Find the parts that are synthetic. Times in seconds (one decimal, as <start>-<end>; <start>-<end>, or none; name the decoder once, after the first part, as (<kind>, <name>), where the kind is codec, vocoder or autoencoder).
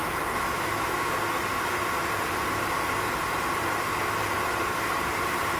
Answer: 0.0-1.1 (autoencoder, DAC-VAE)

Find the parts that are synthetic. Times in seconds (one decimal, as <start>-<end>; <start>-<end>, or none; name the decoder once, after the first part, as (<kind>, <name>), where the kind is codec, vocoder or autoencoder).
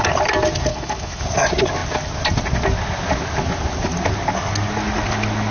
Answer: 0.7-1.2 (autoencoder, DAC-VAE)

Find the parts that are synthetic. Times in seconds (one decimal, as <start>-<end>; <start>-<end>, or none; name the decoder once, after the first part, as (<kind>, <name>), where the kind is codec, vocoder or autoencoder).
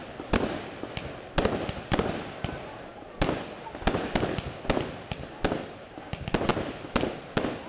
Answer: none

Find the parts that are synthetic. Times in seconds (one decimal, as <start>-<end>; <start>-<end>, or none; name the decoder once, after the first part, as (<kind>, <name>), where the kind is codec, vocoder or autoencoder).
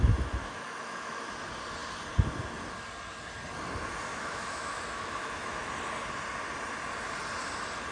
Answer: 0.4-1.3 (autoencoder, DAC-VAE); 4.1-5.7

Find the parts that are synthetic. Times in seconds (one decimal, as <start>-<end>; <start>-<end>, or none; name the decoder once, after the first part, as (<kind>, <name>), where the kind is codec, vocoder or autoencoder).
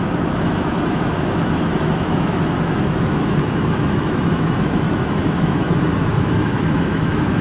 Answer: 0.0-7.4 (autoencoder, DAC-VAE)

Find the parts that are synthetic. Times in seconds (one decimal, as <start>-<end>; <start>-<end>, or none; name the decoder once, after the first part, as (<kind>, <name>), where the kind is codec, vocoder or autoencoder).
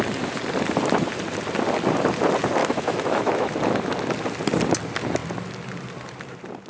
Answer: 2.6-3.6 (autoencoder, DAC-VAE)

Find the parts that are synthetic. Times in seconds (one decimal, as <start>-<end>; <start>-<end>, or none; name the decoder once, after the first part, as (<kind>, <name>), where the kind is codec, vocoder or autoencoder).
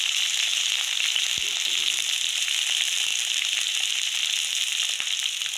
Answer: none